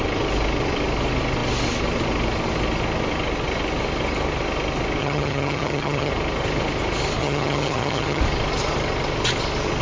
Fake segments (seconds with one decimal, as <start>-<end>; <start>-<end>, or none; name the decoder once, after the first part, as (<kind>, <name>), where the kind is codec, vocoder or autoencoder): 5.0-6.1 (vocoder, HiFi-GAN); 7.2-8.2